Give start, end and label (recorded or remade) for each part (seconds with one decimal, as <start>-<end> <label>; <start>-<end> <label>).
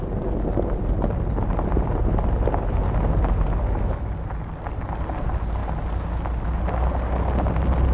0.0-7.9 recorded